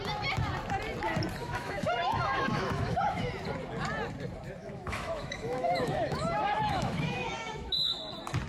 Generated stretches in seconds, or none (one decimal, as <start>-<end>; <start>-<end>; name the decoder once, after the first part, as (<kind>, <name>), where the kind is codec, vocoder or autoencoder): 1.4-3.3 (autoencoder, DAC-VAE); 4.6-8.0